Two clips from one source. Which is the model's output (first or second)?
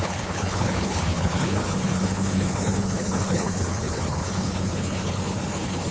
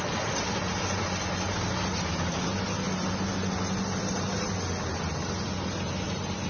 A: first